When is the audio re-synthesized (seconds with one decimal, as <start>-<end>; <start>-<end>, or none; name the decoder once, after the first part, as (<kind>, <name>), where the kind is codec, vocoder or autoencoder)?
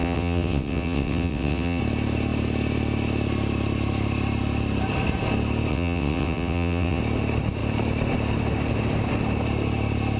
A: 0.0-1.8 (vocoder, WaveNeXt); 5.7-7.0